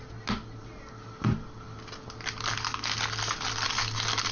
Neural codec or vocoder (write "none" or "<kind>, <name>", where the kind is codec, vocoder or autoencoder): none